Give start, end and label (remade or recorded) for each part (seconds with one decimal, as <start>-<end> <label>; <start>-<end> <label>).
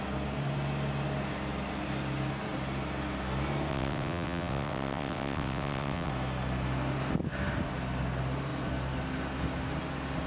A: 0.0-3.7 recorded; 3.7-6.1 remade; 6.1-10.3 recorded